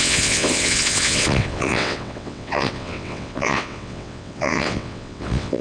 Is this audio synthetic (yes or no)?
yes